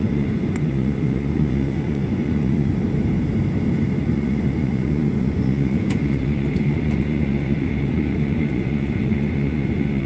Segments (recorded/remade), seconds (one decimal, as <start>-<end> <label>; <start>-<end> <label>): 0.0-2.7 remade; 2.7-4.0 recorded; 4.0-10.1 remade